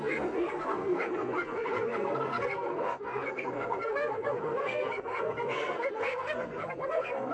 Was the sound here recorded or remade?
remade